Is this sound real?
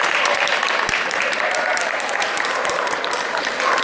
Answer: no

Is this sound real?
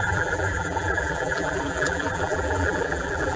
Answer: no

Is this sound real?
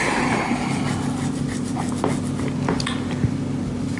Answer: yes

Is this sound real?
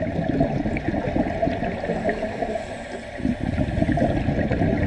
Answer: yes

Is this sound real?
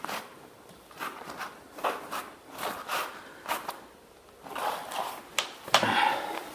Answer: yes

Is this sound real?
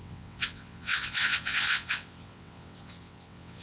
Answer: no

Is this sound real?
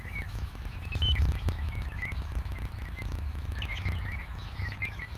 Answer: no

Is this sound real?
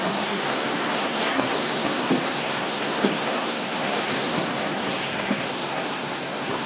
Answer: no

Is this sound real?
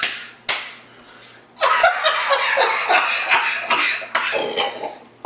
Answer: yes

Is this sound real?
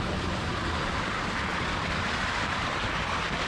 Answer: yes